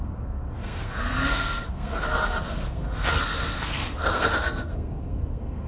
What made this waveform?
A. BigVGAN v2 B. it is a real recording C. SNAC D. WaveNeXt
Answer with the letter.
C